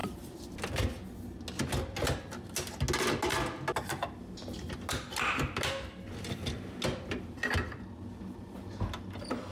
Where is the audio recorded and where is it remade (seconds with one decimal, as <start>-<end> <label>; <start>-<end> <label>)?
0.0-0.8 remade; 0.8-9.5 recorded